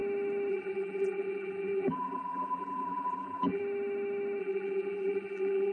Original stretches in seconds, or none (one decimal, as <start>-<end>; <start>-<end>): 0.0-0.5; 3.6-4.4